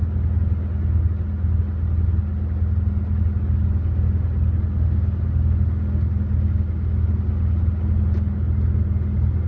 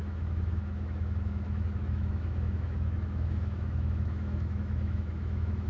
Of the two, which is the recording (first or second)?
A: first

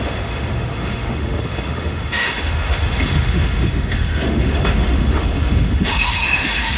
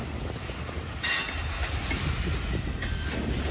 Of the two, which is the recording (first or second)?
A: second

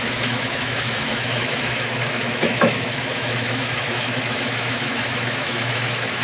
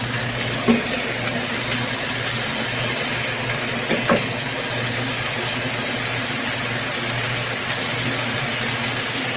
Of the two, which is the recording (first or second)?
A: second